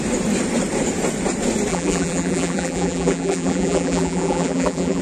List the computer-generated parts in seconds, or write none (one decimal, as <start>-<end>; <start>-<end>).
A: 1.7-5.0